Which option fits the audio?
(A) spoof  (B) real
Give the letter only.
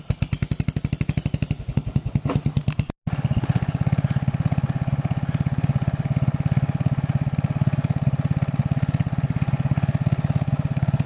B